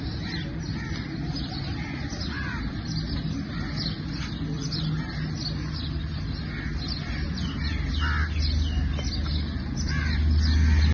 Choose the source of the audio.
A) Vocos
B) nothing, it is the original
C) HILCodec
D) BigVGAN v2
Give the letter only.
B